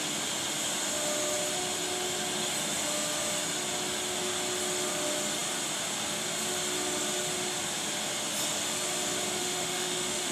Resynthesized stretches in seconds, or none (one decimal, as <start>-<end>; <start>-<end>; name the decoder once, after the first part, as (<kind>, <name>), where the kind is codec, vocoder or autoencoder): 9.4-10.3 (autoencoder, DAC-VAE)